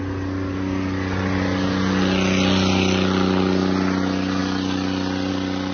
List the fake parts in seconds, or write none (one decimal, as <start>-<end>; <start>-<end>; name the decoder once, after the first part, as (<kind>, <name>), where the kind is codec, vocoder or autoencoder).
none